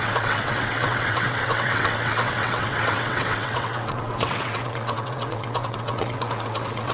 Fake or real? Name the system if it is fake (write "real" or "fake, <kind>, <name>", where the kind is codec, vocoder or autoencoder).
fake, vocoder, WaveNeXt